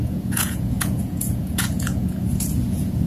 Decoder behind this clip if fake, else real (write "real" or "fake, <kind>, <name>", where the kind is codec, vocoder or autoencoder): fake, vocoder, Vocos